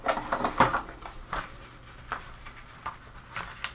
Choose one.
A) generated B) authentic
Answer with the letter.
B